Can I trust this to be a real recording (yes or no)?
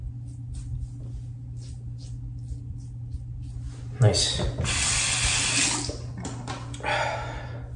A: yes